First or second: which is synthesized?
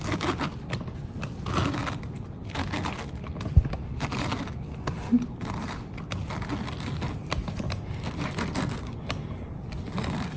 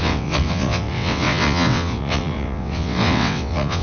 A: second